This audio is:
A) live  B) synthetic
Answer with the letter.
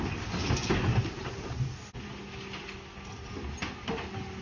A